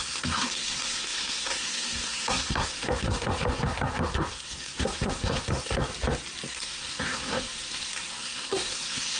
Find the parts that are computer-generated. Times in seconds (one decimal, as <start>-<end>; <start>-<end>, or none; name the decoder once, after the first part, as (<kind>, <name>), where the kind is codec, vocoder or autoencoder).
0.0-5.9 (codec, SNAC); 6.5-9.2